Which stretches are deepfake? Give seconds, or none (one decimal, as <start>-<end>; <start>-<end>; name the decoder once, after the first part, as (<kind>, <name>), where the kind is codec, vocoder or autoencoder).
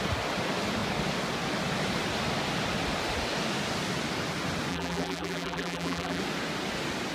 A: 4.7-6.2 (vocoder, BigVGAN v2)